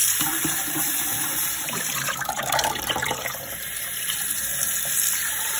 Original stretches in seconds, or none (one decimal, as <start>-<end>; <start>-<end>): 4.5-5.6